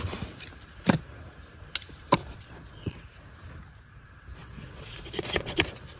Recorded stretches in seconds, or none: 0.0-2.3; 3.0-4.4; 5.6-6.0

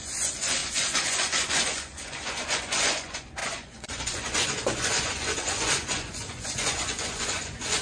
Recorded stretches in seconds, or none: none

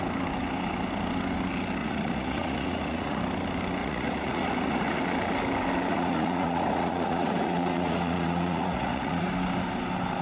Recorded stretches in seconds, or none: 0.0-1.8; 3.2-3.8; 5.0-5.9; 9.3-10.2